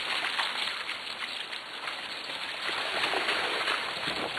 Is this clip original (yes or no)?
yes